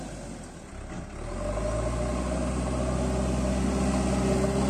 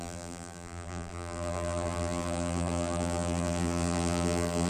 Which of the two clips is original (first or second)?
first